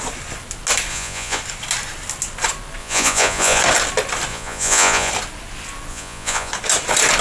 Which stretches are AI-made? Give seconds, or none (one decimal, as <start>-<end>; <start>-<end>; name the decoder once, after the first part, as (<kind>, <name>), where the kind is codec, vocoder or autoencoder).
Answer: 0.9-1.4 (vocoder, Vocos); 2.8-3.6; 4.3-5.1; 5.9-6.5